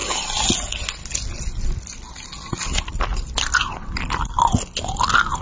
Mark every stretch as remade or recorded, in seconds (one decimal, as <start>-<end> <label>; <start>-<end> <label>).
0.0-5.4 recorded